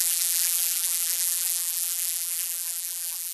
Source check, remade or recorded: remade